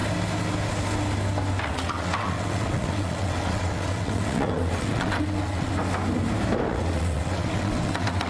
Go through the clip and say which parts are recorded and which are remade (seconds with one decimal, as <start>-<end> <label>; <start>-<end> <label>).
0.0-1.6 recorded; 1.6-5.7 remade; 5.7-6.7 recorded; 6.7-8.3 remade